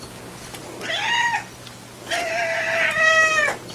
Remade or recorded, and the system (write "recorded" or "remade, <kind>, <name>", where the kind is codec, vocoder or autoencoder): recorded